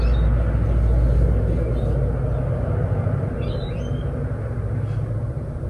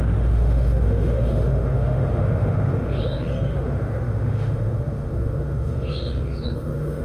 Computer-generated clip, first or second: second